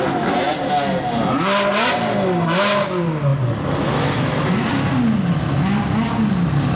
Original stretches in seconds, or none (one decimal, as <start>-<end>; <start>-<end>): 0.0-6.8